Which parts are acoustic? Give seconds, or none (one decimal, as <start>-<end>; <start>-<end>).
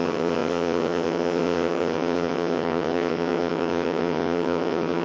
none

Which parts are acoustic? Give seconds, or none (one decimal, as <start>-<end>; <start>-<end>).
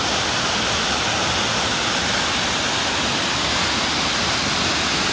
0.0-5.1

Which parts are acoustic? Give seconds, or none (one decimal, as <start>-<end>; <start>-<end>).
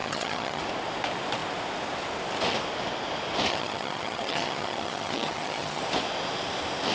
0.6-3.5; 5.8-6.9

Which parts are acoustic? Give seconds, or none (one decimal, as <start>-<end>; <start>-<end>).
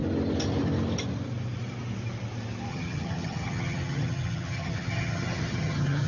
0.0-2.7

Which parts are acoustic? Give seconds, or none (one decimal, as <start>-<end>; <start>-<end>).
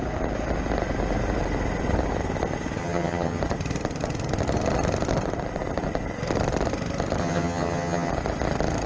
0.0-2.8; 3.4-7.2; 8.1-8.9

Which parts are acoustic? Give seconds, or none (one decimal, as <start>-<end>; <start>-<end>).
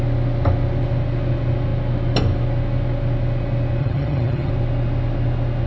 0.0-3.8; 4.5-5.7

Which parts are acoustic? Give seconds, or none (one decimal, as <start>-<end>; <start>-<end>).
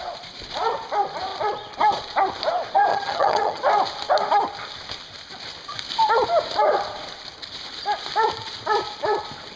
0.0-2.9; 3.6-9.6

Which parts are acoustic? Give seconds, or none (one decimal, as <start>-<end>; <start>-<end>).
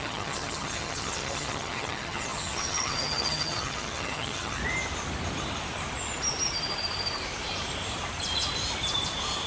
4.6-9.5